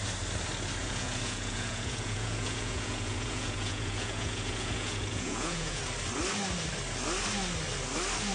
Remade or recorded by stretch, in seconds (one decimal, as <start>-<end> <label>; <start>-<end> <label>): 0.0-0.8 recorded; 0.8-5.8 remade; 5.8-8.3 recorded